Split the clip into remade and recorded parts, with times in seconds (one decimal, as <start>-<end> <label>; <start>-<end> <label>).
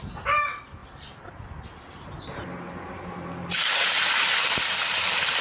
0.0-5.4 recorded